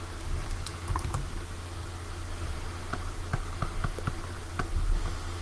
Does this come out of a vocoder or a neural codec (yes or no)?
no